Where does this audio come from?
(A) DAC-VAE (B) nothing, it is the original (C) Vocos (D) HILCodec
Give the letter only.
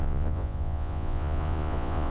C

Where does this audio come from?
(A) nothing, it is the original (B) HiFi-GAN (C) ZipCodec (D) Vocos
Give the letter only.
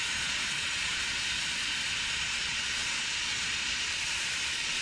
D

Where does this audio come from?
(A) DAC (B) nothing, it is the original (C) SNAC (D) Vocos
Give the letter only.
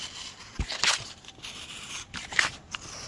B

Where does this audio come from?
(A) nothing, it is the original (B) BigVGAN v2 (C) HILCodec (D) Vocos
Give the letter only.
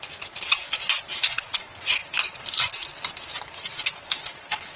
A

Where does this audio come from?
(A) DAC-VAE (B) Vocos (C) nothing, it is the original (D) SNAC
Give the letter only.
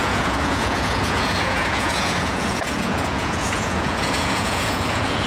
B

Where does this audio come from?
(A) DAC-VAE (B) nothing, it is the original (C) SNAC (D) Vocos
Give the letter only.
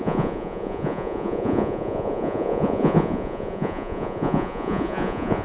D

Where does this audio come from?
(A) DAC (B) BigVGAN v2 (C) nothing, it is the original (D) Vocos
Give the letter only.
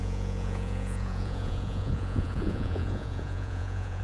D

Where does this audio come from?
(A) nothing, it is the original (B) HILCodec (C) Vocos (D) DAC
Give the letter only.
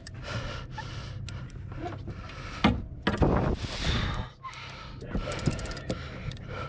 A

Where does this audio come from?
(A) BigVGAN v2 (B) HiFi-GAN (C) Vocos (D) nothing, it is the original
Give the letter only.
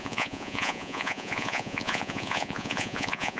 C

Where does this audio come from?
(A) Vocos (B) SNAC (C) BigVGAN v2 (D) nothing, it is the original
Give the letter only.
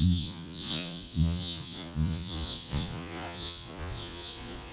A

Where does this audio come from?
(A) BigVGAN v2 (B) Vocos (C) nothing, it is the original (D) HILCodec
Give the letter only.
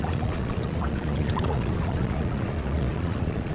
B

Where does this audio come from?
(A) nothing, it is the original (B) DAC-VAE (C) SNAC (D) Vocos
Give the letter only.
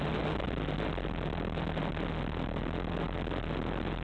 A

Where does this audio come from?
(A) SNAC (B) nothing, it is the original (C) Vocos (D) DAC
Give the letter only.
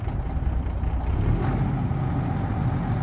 B